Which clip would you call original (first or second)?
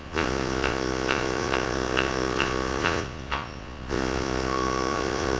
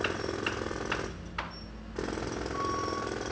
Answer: second